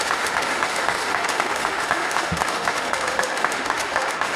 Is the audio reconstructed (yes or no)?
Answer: yes